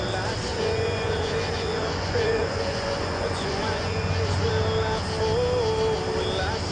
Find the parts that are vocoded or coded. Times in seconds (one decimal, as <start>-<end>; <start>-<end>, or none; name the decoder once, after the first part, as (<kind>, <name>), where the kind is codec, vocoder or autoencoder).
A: 0.5-4.5 (vocoder, Vocos)